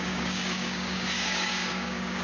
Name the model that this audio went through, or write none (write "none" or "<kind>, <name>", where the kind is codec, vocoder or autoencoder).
codec, DAC